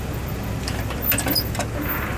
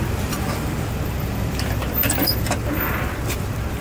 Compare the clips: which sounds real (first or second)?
first